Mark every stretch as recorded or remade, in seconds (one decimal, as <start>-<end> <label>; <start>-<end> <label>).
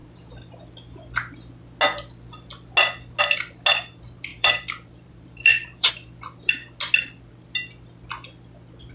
0.0-4.3 recorded; 4.3-5.9 remade; 5.9-8.9 recorded